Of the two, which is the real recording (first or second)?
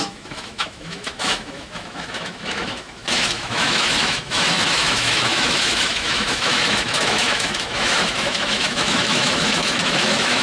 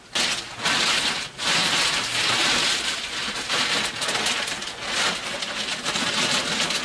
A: second